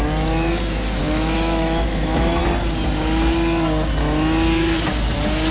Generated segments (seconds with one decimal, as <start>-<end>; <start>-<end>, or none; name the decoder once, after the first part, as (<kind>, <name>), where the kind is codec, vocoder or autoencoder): 1.0-2.4 (autoencoder, DAC-VAE)